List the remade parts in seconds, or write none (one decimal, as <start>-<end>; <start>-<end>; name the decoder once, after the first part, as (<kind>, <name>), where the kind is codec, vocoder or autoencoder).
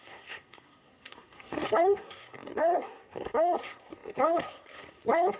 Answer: 0.0-5.4 (codec, SNAC)